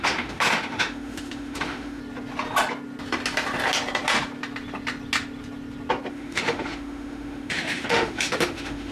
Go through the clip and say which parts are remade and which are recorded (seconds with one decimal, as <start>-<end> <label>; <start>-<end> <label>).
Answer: 0.0-2.0 remade; 2.0-6.1 recorded; 6.1-8.9 remade